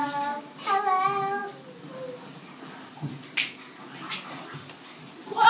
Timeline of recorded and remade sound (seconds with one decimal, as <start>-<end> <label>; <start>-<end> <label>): 0.0-5.5 recorded